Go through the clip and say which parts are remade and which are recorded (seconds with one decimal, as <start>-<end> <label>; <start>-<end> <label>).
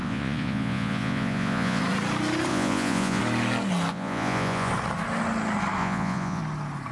0.0-1.8 remade; 1.8-2.5 recorded; 2.5-3.2 remade; 3.2-3.9 recorded; 3.9-4.7 remade; 4.7-5.8 recorded; 5.8-6.4 remade; 6.4-6.9 recorded